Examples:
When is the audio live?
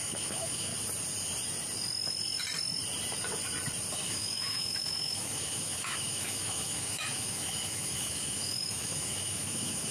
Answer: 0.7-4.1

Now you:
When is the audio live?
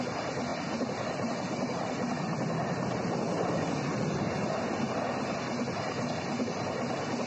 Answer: 0.0-7.3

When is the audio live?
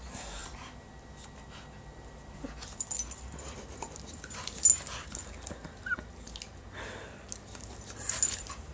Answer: 0.0-8.7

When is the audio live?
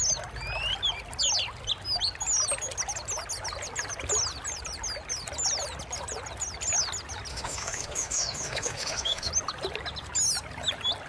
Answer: 0.0-7.3; 9.3-11.1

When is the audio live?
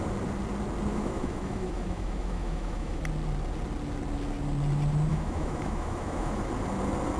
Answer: 0.0-0.9; 3.0-5.1; 6.4-7.2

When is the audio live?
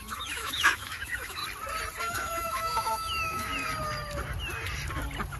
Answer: 1.4-2.0; 3.5-5.4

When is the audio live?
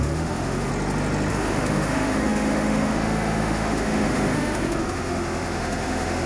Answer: 0.7-1.3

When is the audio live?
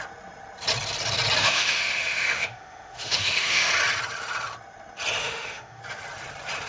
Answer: 0.0-1.4; 3.7-5.2; 5.8-6.7